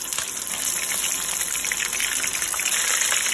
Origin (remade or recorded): recorded